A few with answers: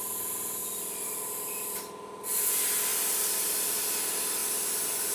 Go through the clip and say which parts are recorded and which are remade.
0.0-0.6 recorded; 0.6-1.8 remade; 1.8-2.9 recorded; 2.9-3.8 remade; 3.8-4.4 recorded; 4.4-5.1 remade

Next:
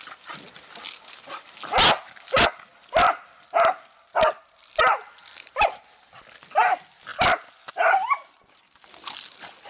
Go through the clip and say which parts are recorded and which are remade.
0.0-2.7 recorded; 2.7-4.8 remade; 4.8-7.1 recorded; 7.1-8.4 remade; 8.4-9.7 recorded

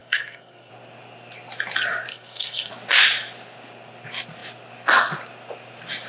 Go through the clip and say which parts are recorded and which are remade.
0.0-0.7 remade; 0.7-2.1 recorded; 2.1-2.7 remade; 2.7-6.1 recorded

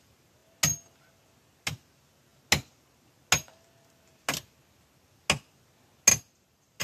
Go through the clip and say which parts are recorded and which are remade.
0.0-6.1 recorded; 6.1-6.8 remade

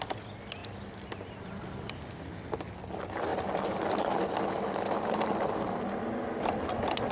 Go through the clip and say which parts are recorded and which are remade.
0.0-7.1 recorded

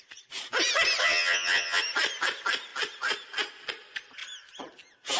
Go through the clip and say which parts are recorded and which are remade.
0.0-1.0 recorded; 1.0-1.8 remade; 1.8-5.2 recorded